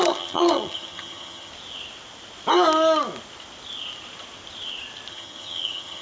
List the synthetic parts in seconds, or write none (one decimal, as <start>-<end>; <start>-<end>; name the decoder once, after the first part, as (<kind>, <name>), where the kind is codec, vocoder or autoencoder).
0.0-1.5 (vocoder, HiFi-GAN); 5.1-6.0